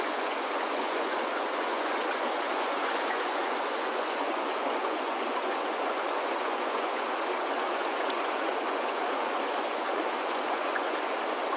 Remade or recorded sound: remade